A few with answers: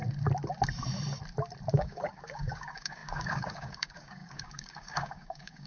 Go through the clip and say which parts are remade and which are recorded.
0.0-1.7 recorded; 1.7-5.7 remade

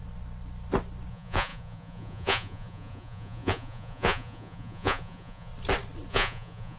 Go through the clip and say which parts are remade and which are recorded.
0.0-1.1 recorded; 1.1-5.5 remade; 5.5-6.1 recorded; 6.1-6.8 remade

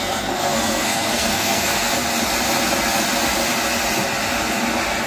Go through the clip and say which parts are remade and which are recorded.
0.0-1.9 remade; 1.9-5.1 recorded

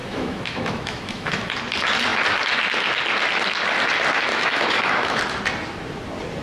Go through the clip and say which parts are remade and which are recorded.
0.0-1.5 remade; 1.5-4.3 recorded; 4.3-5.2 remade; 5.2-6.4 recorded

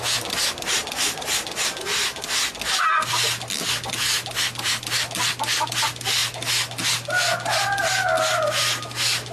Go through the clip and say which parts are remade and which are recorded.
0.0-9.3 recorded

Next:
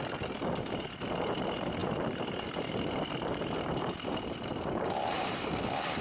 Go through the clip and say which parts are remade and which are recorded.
0.0-1.8 recorded; 1.8-5.4 remade; 5.4-6.0 recorded